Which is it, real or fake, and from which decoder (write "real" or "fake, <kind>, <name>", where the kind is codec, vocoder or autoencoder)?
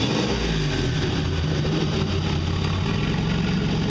real